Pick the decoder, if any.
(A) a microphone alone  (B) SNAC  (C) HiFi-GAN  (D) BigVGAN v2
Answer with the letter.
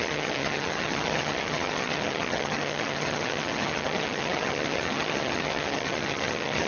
C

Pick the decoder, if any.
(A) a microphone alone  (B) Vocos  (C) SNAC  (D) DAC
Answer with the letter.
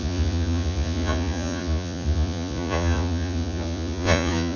B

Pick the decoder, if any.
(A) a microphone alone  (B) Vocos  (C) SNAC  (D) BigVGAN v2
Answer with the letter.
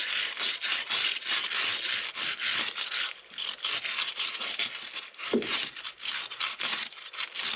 A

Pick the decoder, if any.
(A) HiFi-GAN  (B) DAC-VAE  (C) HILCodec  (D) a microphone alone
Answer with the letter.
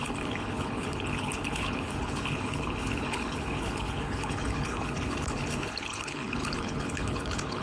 C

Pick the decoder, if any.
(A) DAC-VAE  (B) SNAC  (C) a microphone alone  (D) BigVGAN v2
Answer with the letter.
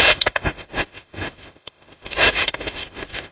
A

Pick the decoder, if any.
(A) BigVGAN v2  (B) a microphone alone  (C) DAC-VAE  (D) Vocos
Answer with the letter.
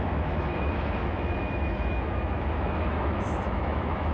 C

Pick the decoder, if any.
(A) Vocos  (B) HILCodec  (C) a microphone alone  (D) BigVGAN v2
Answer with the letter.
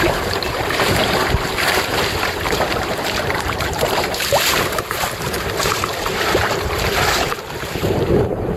D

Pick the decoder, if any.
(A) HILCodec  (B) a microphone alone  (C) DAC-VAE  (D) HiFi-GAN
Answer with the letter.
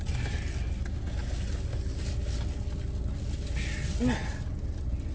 B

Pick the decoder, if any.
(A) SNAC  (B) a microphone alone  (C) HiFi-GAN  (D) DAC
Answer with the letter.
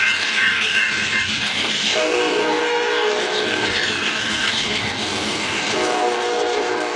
D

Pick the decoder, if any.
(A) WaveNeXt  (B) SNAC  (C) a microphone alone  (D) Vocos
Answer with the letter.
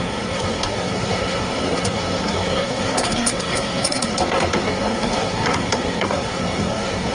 B